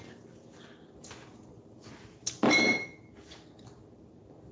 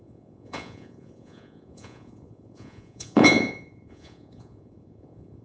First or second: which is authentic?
first